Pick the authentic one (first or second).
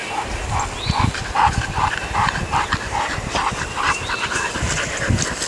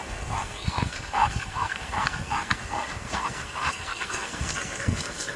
first